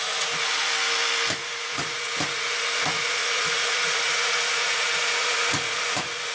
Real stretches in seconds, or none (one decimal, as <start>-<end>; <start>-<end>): 0.7-1.4